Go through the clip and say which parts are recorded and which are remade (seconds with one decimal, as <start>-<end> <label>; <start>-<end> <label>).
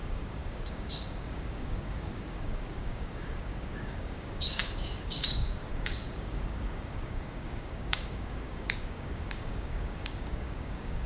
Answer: 0.0-11.1 remade